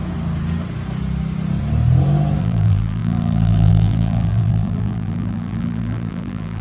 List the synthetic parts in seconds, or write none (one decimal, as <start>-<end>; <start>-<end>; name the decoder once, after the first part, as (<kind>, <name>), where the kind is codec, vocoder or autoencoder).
2.4-6.6 (vocoder, BigVGAN v2)